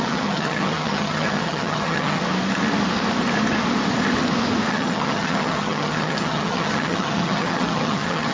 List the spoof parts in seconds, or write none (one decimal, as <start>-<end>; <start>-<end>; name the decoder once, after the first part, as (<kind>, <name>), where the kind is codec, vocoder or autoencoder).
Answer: 0.0-2.2 (vocoder, HiFi-GAN); 4.7-8.3